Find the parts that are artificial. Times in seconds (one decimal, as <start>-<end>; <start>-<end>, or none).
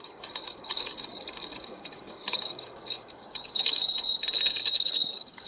0.0-3.8; 4.5-5.5